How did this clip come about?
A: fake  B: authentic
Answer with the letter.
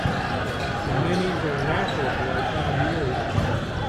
B